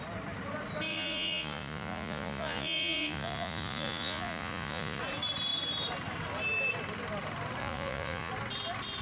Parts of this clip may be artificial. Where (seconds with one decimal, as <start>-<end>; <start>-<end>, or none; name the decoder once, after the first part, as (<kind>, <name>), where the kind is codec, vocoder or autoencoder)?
0.9-5.0 (vocoder, Vocos); 7.6-8.3